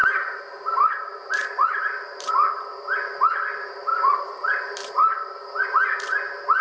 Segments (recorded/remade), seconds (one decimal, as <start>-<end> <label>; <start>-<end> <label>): 0.0-2.3 remade; 2.3-3.9 recorded; 3.9-5.3 remade; 5.3-6.6 recorded